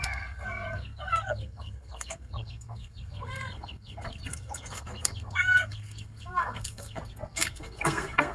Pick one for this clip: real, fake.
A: fake